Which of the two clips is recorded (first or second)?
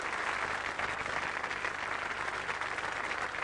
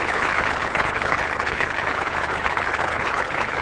first